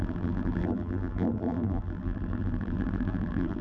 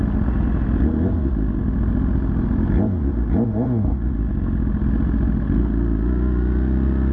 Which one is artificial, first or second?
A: first